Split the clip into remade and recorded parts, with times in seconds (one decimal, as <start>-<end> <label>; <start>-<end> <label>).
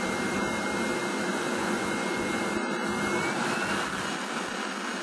0.0-1.3 recorded; 1.3-2.4 remade; 2.4-5.0 recorded